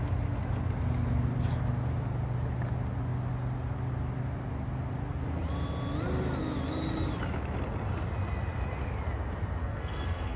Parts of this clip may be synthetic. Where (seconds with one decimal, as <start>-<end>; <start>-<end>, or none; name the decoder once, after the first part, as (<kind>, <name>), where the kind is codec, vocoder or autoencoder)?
9.6-10.4 (codec, SNAC)